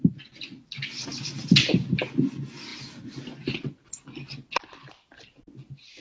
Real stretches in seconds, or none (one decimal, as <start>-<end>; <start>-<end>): 0.0-6.0